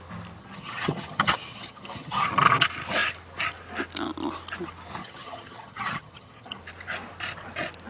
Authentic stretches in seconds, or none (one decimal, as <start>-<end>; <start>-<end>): 0.0-0.4; 2.3-5.0; 6.6-7.9